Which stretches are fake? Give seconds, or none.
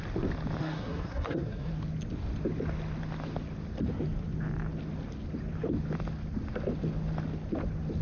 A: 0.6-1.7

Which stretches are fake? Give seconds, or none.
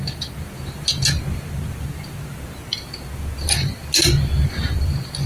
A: none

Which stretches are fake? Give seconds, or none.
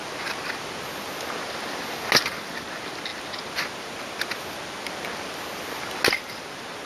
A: none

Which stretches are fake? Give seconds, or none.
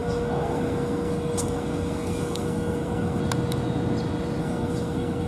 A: 0.0-3.2; 4.4-5.3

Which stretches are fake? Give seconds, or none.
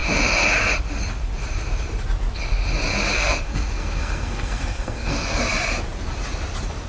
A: 3.1-5.4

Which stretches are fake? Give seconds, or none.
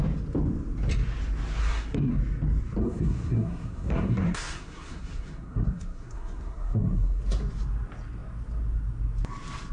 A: 1.6-2.2; 2.8-7.2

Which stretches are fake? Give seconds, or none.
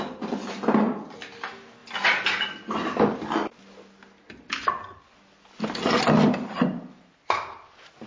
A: none